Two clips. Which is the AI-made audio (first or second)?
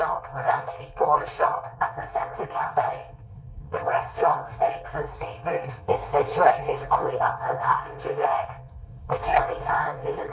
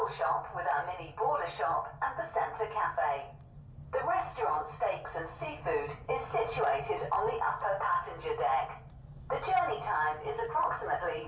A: first